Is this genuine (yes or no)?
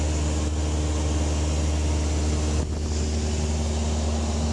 yes